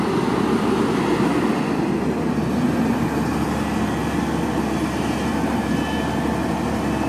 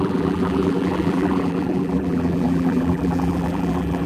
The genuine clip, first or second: first